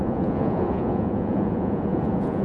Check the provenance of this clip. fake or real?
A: fake